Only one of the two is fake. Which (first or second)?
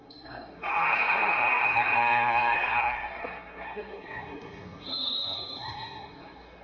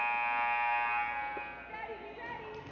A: first